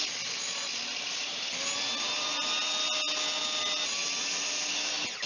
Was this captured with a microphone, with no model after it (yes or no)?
yes